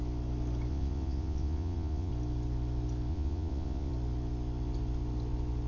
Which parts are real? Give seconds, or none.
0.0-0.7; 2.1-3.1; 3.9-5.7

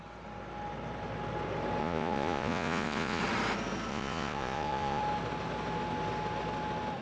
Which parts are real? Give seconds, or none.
0.0-1.8; 3.2-3.9; 5.0-7.0

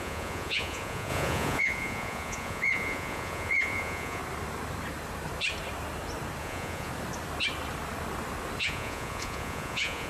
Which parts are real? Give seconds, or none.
4.2-6.4; 6.9-8.6

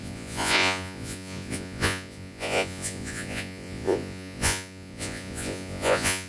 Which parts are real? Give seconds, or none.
none

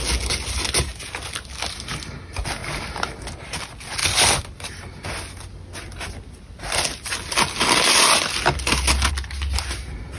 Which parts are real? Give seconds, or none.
0.0-10.2

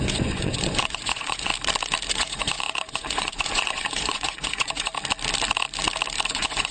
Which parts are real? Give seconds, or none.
1.5-2.1; 4.9-6.3

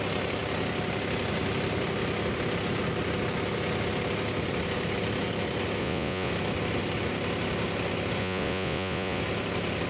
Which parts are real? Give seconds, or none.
0.0-5.8; 6.3-8.2; 9.2-9.9